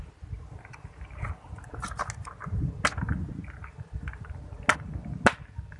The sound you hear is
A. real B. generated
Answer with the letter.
A